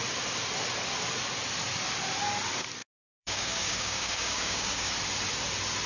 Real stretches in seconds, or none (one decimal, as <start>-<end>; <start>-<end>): 0.0-2.8; 4.9-5.9